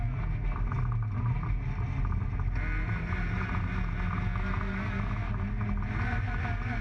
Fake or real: real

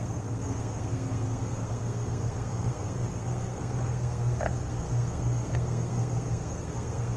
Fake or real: fake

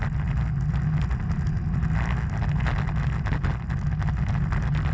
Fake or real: real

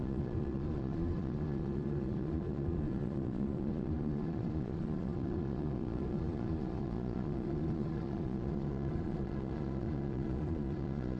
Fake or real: fake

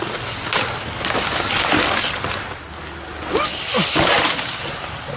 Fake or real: real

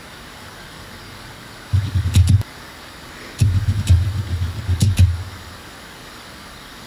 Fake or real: fake